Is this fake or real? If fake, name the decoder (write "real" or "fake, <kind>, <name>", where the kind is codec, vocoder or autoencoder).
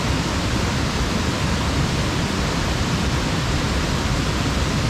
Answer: real